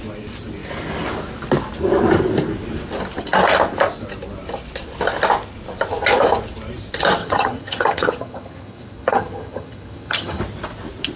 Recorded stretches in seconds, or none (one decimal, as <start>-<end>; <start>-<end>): 0.0-7.2; 10.4-11.2